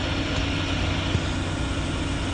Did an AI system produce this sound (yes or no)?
no